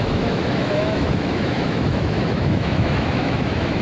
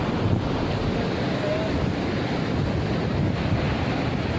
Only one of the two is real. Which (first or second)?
second